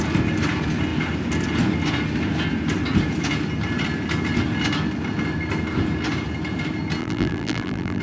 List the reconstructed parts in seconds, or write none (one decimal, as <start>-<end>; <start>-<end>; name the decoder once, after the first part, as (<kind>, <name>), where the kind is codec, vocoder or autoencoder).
7.0-8.0 (vocoder, BigVGAN v2)